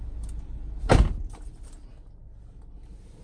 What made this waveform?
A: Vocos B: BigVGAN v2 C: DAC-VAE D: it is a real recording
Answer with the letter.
D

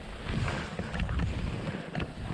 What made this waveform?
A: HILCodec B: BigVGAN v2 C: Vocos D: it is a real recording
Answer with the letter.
D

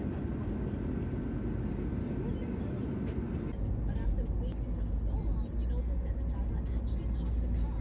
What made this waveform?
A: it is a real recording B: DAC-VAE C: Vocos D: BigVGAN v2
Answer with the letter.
A